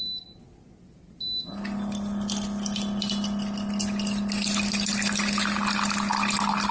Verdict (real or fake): real